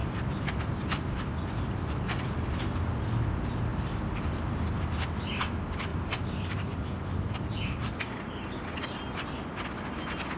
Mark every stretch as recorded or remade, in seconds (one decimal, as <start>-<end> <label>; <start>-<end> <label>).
0.0-2.5 remade; 2.5-3.7 recorded; 3.7-4.6 remade; 4.6-5.9 recorded; 5.9-8.0 remade; 8.0-10.4 recorded